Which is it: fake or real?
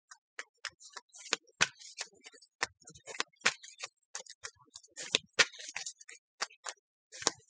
real